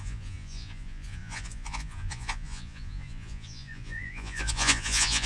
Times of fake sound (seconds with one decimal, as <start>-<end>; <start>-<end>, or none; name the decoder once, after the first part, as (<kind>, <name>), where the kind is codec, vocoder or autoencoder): 0.0-5.3 (vocoder, Vocos)